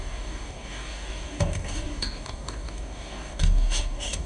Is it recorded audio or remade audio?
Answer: remade